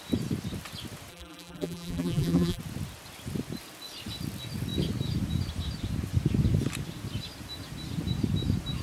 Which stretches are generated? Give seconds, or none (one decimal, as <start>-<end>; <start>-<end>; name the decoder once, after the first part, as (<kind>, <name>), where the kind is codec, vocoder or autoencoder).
1.1-2.6 (vocoder, BigVGAN v2)